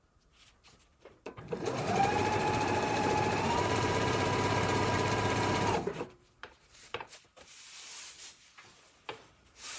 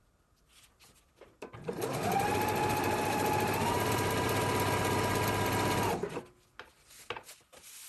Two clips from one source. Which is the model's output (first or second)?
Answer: first